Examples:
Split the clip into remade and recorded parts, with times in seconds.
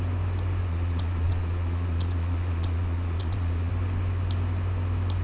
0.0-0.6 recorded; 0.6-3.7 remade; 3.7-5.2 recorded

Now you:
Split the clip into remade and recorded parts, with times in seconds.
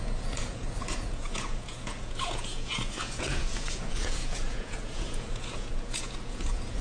0.0-6.8 remade